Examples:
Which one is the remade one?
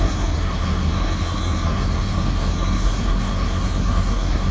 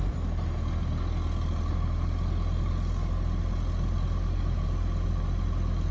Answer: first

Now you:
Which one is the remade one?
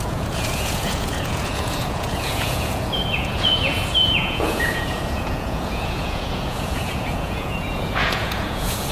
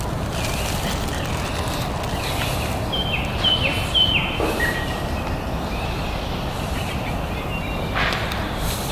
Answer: first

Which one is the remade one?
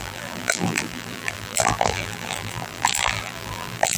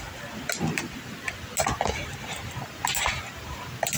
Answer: first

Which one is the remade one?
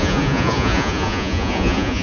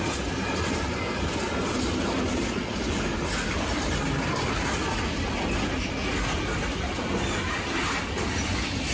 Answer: first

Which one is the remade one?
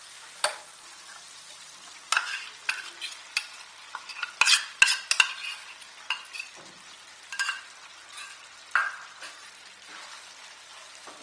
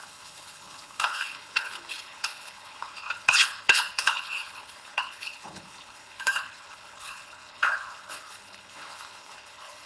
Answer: second